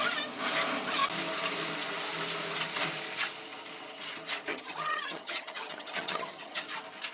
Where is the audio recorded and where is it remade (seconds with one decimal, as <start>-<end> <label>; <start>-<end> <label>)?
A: 0.0-4.5 recorded; 4.5-6.6 remade; 6.6-7.1 recorded